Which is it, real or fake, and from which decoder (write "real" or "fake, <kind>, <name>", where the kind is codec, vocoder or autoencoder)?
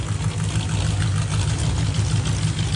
real